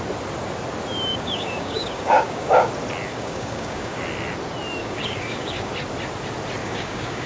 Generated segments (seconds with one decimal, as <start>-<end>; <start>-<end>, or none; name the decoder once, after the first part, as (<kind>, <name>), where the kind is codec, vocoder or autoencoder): 1.1-2.7 (codec, DAC); 3.1-4.0; 4.8-5.7; 6.6-7.3